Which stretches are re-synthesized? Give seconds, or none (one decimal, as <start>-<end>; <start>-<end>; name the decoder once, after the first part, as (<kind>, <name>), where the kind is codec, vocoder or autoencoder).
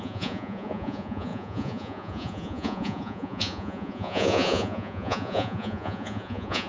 0.0-6.7 (vocoder, Vocos)